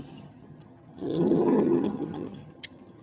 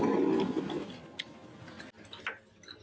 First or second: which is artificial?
first